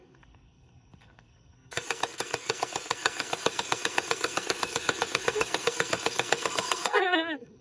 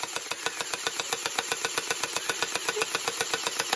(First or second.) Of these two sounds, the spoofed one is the first